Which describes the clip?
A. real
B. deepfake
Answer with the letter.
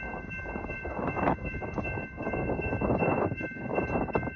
B